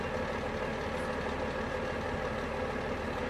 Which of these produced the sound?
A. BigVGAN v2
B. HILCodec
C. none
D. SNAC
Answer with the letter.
C